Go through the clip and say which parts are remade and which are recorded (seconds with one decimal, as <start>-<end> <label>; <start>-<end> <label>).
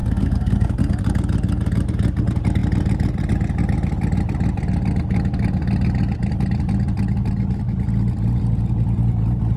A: 0.0-1.0 remade; 1.0-9.6 recorded